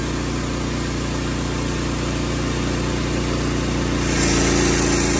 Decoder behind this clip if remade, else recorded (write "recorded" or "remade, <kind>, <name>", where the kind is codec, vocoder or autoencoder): recorded